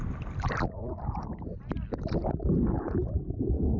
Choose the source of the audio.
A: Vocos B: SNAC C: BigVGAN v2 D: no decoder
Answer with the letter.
D